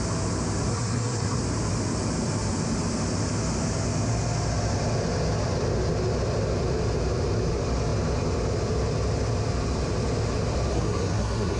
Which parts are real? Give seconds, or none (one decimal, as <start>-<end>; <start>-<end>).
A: 0.0-0.7; 1.4-10.7

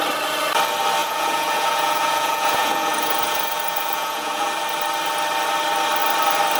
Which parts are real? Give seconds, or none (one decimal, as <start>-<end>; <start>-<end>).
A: 0.0-1.0; 4.5-6.6

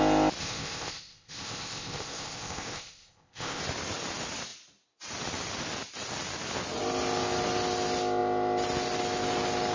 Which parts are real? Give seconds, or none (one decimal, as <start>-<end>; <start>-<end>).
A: 0.0-0.4; 3.6-9.7

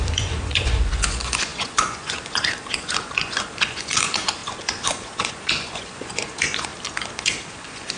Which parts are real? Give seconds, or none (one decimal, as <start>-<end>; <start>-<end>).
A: 6.7-7.2

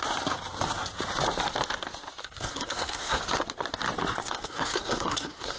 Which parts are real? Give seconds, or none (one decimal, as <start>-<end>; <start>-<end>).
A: 0.0-2.2; 3.2-4.2

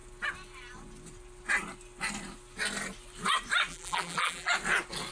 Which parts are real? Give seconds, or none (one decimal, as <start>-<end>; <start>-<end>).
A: 0.0-3.7; 4.5-5.1

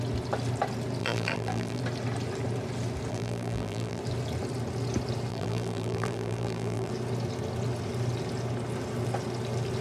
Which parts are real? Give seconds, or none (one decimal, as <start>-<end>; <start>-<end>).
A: 0.0-1.0; 1.8-3.1; 4.0-5.3; 6.9-9.8